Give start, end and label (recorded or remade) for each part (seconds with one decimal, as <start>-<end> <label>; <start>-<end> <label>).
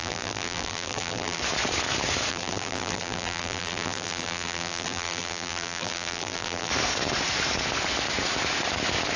0.0-1.4 remade; 1.4-2.3 recorded; 2.3-6.7 remade; 6.7-9.2 recorded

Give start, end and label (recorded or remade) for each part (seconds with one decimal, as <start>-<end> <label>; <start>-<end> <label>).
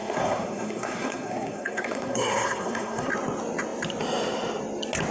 0.0-3.1 remade; 3.1-5.1 recorded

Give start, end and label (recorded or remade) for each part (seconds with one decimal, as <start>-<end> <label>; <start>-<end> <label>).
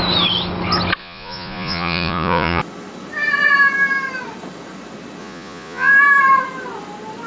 0.0-1.0 recorded; 1.0-2.6 remade; 2.6-5.2 recorded; 5.2-5.9 remade; 5.9-7.3 recorded